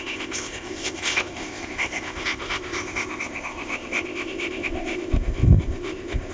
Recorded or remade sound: remade